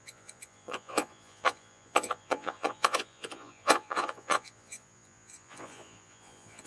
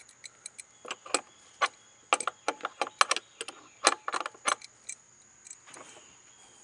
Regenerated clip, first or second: first